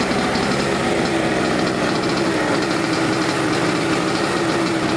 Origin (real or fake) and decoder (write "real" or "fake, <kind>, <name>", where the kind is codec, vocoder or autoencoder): fake, vocoder, BigVGAN v2